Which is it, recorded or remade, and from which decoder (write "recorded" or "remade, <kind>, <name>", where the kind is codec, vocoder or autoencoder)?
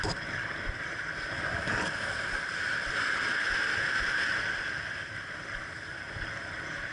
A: recorded